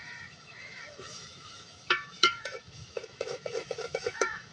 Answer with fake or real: fake